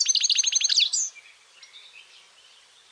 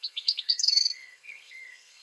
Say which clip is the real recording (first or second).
first